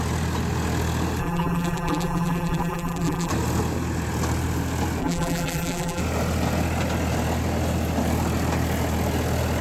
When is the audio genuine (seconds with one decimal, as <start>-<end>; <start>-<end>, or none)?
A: 0.0-1.2; 3.3-5.0; 6.0-9.6